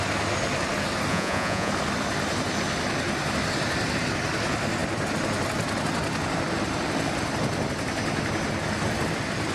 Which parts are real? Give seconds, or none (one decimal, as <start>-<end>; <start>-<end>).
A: 0.0-1.1; 1.7-9.5